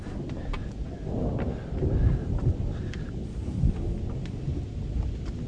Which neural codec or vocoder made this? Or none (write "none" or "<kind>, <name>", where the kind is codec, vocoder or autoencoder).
none